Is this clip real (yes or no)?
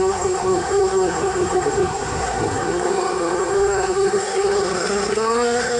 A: no